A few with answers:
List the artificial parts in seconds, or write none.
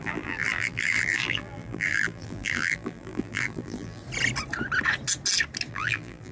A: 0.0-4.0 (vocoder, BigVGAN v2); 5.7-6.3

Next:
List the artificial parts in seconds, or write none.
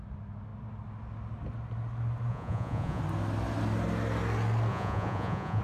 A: 2.3-3.0 (vocoder, Vocos); 4.7-5.6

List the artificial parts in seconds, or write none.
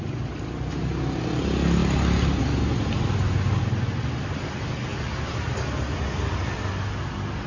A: none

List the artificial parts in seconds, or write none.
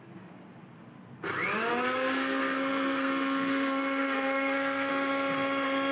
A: 1.7-4.9 (codec, SNAC)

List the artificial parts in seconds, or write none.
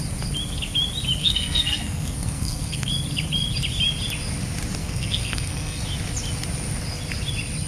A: 1.2-2.9 (codec, SNAC); 4.8-5.8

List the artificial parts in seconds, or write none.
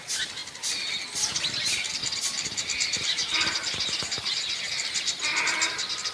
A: 2.0-6.1 (vocoder, BigVGAN v2)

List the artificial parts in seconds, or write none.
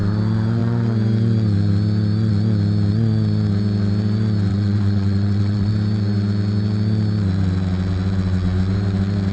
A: 4.5-5.7 (vocoder, WaveNeXt)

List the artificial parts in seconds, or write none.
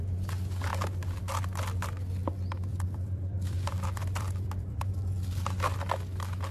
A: 2.7-4.9 (vocoder, BigVGAN v2)